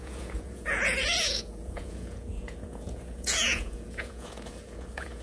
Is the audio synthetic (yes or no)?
yes